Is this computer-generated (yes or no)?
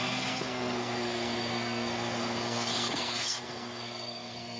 yes